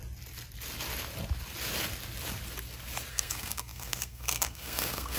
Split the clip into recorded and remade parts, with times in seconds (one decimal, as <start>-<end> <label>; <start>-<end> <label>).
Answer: 0.0-3.1 recorded; 3.1-5.2 remade